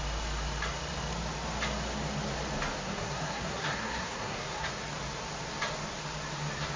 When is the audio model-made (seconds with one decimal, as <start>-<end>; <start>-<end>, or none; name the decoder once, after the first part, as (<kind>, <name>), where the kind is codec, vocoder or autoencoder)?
2.8-4.7 (codec, SNAC)